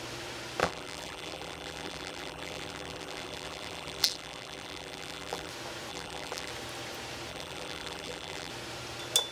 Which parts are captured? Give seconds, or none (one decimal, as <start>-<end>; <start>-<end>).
0.0-0.6; 5.5-5.9; 6.5-7.3; 8.5-9.3